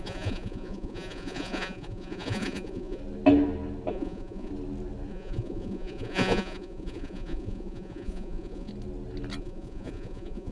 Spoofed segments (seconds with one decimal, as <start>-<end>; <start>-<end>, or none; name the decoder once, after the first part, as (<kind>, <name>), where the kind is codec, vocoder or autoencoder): 0.0-3.0 (vocoder, Vocos); 3.9-4.5; 5.1-8.7; 9.4-10.5